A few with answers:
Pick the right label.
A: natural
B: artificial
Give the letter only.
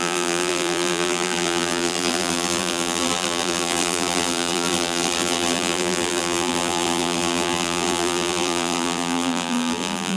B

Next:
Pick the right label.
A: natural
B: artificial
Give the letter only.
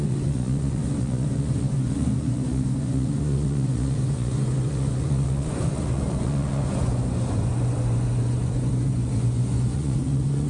B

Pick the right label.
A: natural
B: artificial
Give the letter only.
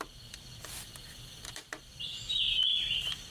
B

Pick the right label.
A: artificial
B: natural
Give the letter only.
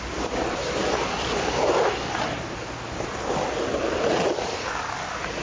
B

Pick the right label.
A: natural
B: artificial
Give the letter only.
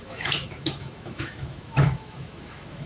B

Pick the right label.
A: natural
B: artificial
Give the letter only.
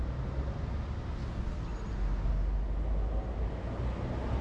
A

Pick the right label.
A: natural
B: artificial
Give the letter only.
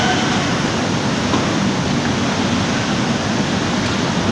A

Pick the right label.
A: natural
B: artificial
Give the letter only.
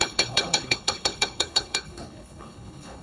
B